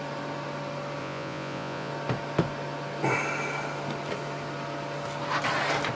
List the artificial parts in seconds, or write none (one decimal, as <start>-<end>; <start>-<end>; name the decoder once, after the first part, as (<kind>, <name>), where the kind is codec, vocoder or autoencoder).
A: 1.0-1.9 (vocoder, Vocos)